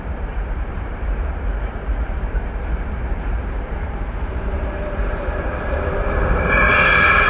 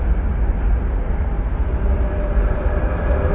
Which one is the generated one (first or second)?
first